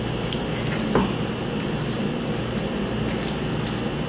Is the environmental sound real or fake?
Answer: real